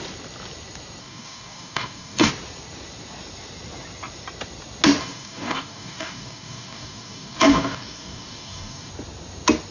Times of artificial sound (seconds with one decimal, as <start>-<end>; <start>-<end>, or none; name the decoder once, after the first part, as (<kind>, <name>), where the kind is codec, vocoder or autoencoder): 1.0-2.3 (codec, DAC); 5.0-8.9